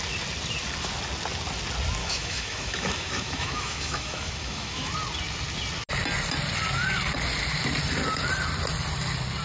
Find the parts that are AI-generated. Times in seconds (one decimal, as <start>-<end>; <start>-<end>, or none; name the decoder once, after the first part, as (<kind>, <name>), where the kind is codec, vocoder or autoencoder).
2.0-4.9 (autoencoder, DAC-VAE)